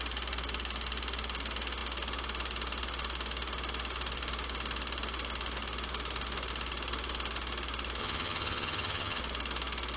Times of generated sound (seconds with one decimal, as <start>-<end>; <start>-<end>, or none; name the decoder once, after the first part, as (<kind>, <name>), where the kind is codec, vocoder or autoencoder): 8.0-9.2 (vocoder, HiFi-GAN)

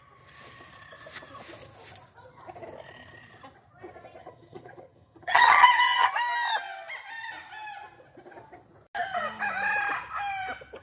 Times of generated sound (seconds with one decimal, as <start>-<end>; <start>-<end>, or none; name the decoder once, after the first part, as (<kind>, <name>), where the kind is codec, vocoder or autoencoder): 4.2-6.1 (vocoder, HiFi-GAN)

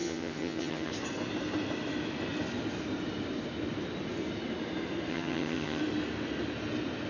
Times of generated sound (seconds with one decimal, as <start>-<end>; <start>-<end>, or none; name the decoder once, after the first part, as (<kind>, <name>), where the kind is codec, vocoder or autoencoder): 0.0-0.9 (vocoder, HiFi-GAN); 5.1-5.8

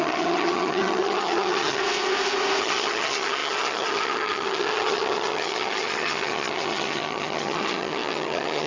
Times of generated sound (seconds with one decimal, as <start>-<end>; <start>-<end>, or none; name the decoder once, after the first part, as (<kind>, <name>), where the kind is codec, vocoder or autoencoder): 0.0-1.8 (vocoder, HiFi-GAN); 2.6-8.7

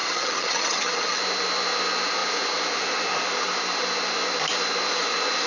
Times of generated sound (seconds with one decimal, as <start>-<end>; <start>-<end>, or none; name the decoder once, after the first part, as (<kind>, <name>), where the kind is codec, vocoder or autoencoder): 0.0-1.2 (vocoder, HiFi-GAN)